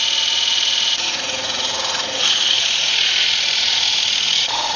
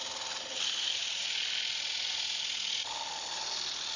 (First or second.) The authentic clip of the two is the second